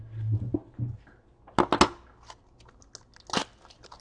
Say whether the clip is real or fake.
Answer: real